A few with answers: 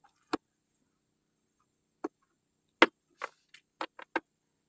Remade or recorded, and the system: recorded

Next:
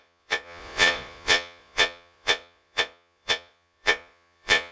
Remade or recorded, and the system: remade, vocoder, Vocos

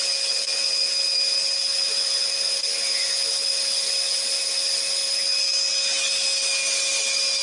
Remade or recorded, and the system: recorded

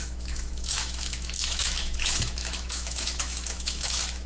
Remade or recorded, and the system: remade, autoencoder, DAC-VAE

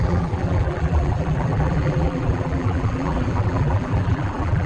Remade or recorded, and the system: remade, vocoder, BigVGAN v2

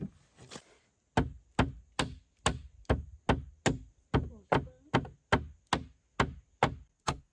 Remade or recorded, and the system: recorded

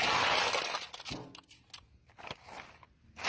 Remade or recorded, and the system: recorded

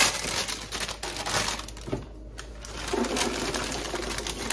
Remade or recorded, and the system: recorded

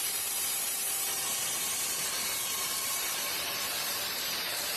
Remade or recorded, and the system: remade, vocoder, BigVGAN v2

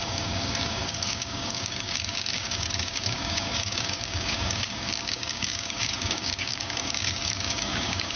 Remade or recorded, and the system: remade, codec, DAC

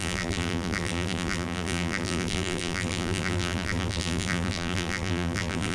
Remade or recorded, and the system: remade, vocoder, BigVGAN v2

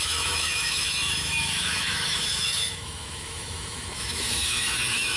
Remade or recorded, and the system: remade, autoencoder, DAC-VAE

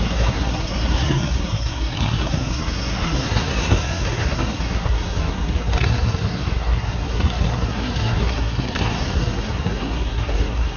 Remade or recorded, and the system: remade, codec, SNAC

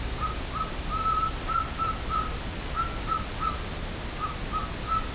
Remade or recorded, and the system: recorded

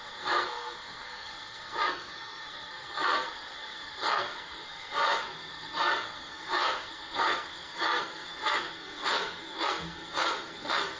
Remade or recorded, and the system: remade, codec, SNAC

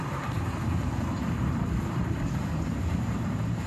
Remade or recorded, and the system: remade, vocoder, BigVGAN v2